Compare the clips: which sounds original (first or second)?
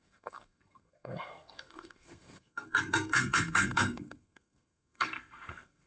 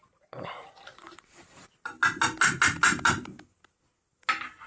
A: second